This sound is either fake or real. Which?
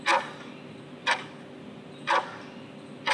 real